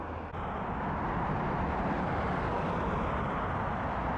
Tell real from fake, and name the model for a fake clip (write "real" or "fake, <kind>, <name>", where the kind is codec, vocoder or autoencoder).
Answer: real